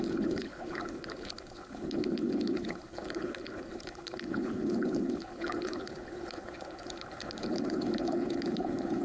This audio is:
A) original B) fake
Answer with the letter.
B